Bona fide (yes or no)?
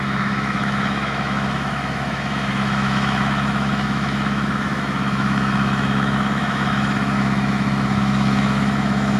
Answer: no